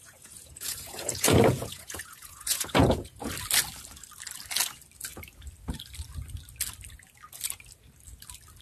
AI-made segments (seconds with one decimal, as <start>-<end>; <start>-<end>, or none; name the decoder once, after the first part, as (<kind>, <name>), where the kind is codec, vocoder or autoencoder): 0.0-3.3 (vocoder, Vocos)